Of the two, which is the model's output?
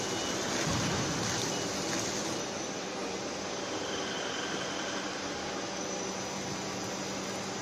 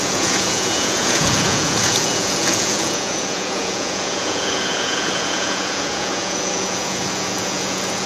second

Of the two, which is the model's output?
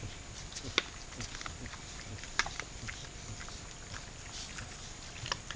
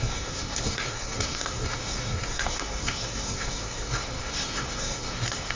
second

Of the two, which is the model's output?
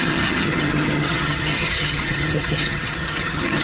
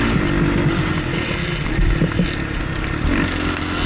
first